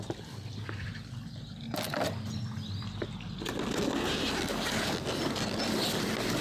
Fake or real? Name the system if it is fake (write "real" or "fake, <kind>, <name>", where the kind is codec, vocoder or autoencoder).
real